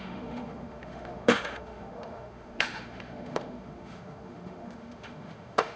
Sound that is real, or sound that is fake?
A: fake